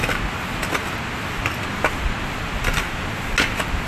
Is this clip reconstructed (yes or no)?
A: no